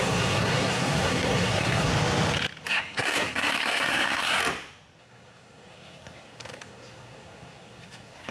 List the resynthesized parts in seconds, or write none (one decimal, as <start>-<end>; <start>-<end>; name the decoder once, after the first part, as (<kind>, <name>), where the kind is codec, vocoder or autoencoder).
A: 0.0-1.9 (codec, SNAC); 2.7-4.4; 5.0-8.3